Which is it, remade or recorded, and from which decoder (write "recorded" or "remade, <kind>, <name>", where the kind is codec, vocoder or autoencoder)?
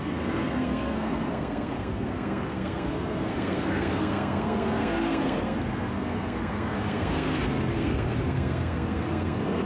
remade, codec, SNAC